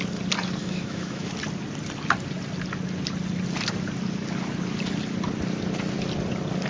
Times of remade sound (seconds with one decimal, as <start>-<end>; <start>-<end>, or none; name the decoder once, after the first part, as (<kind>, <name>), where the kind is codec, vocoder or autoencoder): 0.6-1.3 (autoencoder, DAC-VAE)